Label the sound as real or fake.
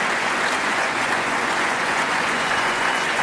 fake